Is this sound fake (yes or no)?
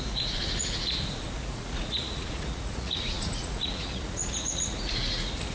yes